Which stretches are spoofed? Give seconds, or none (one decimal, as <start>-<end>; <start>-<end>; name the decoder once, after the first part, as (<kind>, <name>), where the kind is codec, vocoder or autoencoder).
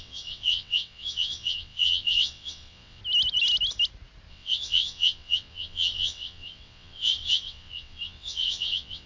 0.0-3.0 (vocoder, WaveNeXt); 4.3-9.1